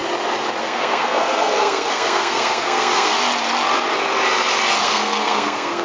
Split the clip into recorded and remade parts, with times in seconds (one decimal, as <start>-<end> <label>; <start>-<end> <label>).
0.0-0.6 recorded; 0.6-3.2 remade; 3.2-4.8 recorded; 4.8-5.8 remade